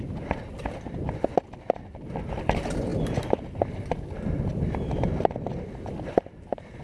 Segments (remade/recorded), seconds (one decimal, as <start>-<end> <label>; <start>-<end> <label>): 0.0-6.8 recorded